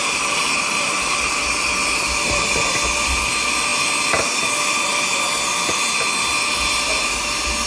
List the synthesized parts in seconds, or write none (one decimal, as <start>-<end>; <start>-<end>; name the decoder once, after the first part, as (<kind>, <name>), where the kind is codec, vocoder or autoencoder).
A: 0.0-1.4 (vocoder, BigVGAN v2)